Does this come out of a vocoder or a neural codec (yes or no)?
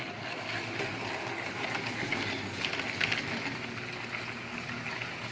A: no